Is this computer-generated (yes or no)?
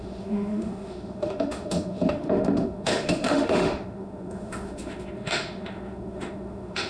yes